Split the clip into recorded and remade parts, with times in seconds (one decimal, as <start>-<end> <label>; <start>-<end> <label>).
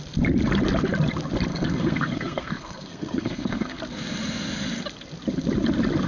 0.0-1.5 recorded; 1.5-3.8 remade; 3.8-6.1 recorded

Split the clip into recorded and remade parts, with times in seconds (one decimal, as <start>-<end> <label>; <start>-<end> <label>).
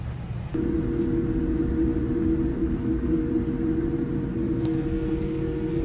0.0-2.5 recorded; 2.5-3.3 remade; 3.3-4.3 recorded; 4.3-5.8 remade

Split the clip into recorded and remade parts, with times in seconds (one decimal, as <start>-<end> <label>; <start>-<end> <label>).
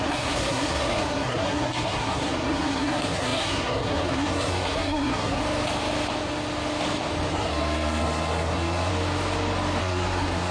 0.0-5.4 remade; 5.4-7.3 recorded; 7.3-8.9 remade; 8.9-9.8 recorded; 9.8-10.5 remade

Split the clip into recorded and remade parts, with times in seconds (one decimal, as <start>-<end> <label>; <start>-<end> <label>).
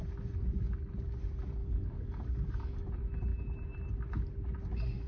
0.0-1.6 recorded; 1.6-2.9 remade; 2.9-5.1 recorded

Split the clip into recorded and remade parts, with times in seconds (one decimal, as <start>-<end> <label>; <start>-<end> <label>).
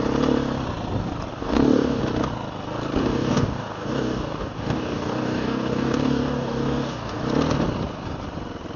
0.0-1.3 recorded; 1.3-2.0 remade; 2.0-3.0 recorded; 3.0-7.2 remade; 7.2-8.8 recorded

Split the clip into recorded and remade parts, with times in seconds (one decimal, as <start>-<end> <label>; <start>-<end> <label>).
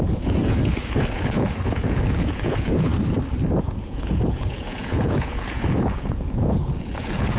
0.0-2.9 remade; 2.9-3.6 recorded; 3.6-7.4 remade